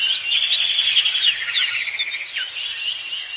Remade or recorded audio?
recorded